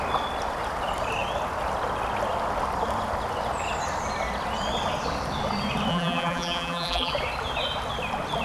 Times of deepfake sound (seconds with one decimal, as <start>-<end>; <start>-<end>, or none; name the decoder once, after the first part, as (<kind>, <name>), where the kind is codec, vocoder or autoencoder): 5.9-7.1 (vocoder, BigVGAN v2)